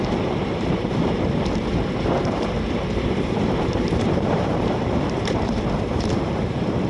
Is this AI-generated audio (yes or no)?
yes